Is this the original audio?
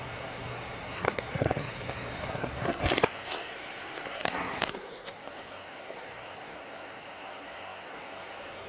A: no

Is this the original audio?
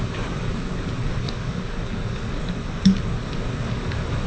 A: no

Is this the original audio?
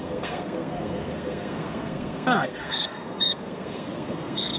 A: no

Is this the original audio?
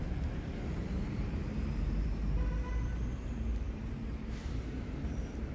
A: no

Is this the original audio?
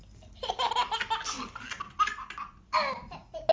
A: yes